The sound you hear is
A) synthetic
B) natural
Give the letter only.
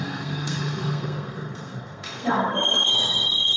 A